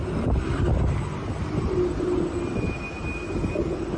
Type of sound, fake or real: real